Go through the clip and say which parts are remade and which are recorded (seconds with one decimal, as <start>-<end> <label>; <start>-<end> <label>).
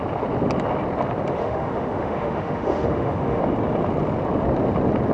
0.0-1.4 recorded; 1.4-3.4 remade; 3.4-5.1 recorded